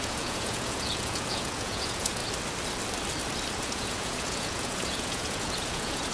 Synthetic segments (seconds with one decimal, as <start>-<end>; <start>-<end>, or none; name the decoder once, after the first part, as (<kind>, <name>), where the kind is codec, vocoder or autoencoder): 0.0-2.2 (vocoder, Vocos); 3.5-6.1